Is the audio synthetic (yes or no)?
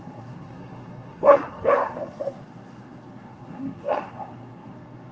yes